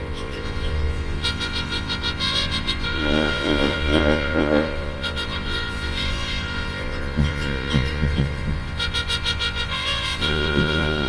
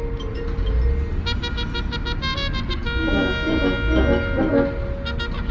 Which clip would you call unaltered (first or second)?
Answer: second